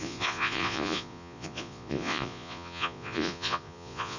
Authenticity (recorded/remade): remade